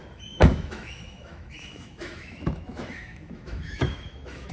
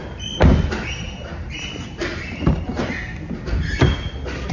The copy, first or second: first